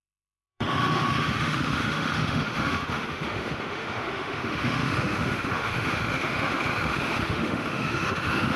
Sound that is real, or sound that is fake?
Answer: fake